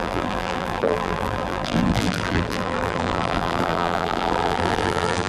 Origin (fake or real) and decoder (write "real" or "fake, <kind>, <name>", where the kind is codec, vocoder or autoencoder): fake, vocoder, BigVGAN v2